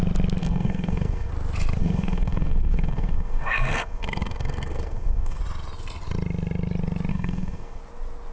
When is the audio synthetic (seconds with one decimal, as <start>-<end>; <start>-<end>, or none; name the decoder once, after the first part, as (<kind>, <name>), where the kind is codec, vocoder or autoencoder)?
0.4-1.3 (codec, SNAC); 1.8-5.4; 7.1-7.8